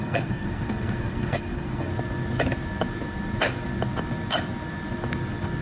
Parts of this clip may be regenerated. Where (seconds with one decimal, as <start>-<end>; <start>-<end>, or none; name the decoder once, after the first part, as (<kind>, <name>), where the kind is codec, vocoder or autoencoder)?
0.0-1.9 (codec, SNAC)